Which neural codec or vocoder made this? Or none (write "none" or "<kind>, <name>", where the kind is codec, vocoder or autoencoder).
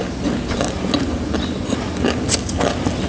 none